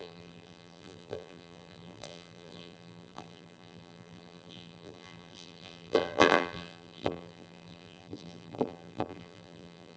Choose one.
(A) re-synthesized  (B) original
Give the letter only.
A